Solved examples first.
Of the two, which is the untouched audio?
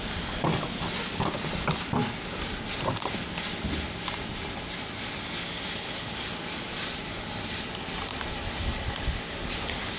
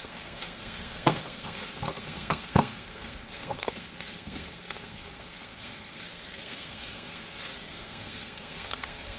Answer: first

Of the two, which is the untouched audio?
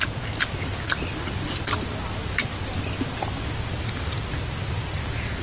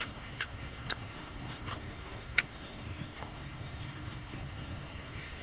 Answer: first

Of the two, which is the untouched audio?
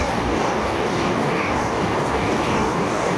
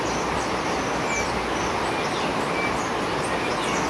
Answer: second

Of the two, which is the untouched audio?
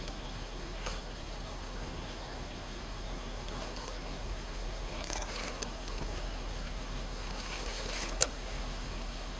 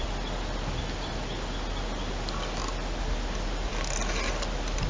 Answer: second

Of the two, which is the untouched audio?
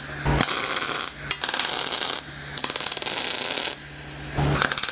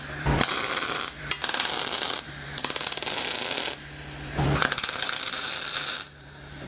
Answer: first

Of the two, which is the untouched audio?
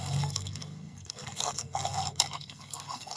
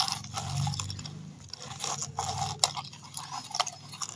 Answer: second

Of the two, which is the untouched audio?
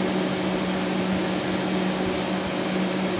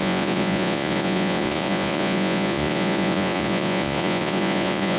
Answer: first